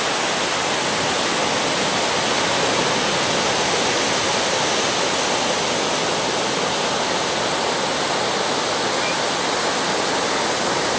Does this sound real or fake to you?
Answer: real